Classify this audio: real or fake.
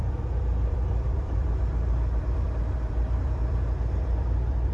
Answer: fake